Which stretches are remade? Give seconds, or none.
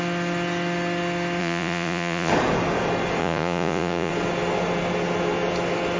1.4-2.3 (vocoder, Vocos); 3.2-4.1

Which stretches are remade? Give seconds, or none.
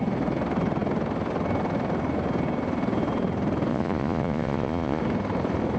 3.7-5.0 (vocoder, Vocos)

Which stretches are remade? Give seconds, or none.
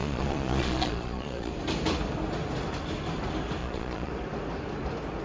0.0-1.5 (vocoder, Vocos); 3.6-4.1